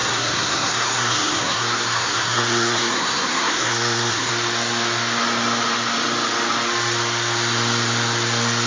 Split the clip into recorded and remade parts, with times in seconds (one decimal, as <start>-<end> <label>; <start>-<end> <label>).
0.0-4.3 remade; 4.3-8.7 recorded